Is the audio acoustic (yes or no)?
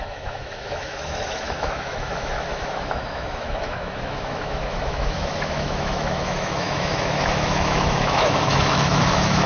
no